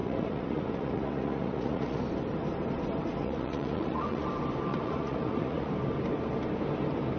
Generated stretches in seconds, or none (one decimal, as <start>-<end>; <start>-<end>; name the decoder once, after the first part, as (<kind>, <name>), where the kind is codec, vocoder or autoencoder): 0.0-2.0 (vocoder, Vocos); 3.2-4.3; 4.7-5.7